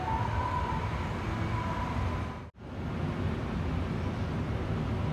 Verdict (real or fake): real